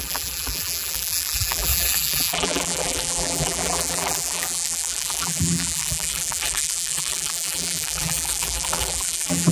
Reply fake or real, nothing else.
fake